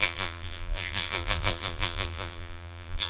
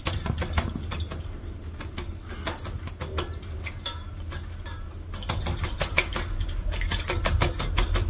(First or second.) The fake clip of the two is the first